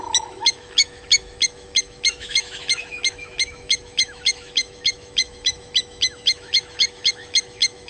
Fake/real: fake